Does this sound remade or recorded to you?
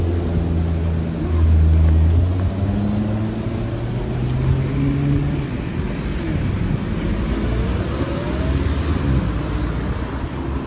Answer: recorded